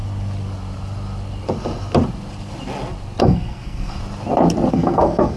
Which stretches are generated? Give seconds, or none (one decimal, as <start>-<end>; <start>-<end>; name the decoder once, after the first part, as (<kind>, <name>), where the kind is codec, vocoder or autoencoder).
3.2-4.0 (codec, SNAC); 4.7-5.4